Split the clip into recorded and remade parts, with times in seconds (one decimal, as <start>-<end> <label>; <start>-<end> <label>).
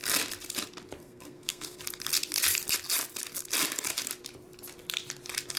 0.0-1.0 recorded; 1.0-1.8 remade; 1.8-5.6 recorded